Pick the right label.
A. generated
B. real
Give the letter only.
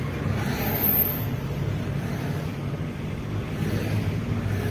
B